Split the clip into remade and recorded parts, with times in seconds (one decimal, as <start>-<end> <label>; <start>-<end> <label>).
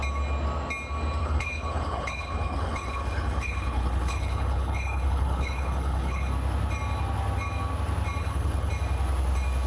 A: 0.0-1.2 recorded; 1.2-6.3 remade; 6.3-8.2 recorded; 8.2-8.7 remade; 8.7-9.7 recorded